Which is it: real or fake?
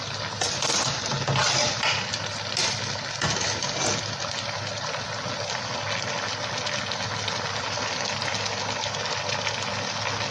real